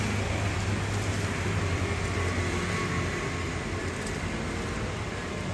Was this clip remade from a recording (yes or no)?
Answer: no